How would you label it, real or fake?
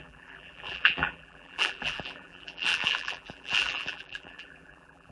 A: fake